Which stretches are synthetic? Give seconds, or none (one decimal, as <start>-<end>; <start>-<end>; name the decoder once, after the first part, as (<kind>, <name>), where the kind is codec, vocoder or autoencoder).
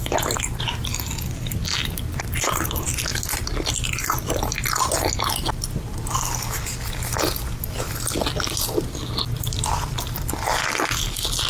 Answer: none